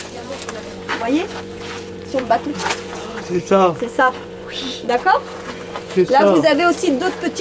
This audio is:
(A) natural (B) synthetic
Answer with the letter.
B